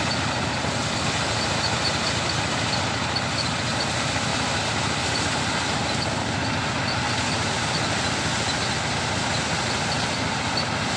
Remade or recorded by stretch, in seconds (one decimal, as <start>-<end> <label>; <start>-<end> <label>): 0.0-11.0 recorded